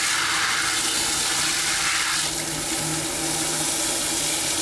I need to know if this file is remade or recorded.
recorded